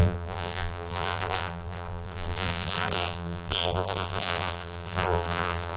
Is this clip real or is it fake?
fake